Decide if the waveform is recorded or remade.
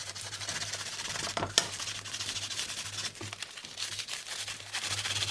recorded